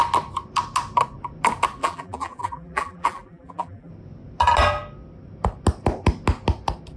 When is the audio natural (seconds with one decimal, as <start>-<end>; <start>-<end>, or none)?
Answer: 0.0-1.8; 3.9-7.0